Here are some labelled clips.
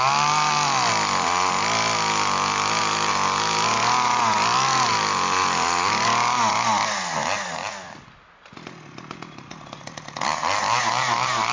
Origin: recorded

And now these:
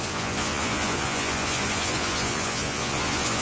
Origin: remade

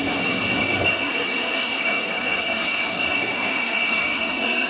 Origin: remade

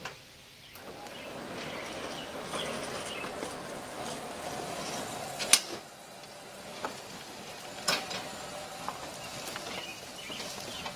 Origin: recorded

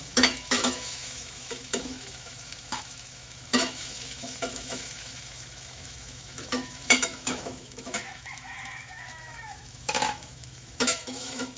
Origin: remade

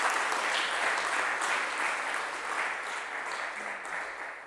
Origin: recorded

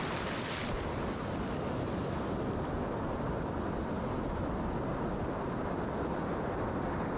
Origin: recorded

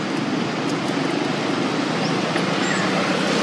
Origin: recorded